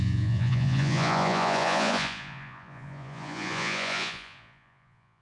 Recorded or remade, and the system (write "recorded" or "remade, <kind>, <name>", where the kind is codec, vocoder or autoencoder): remade, vocoder, Vocos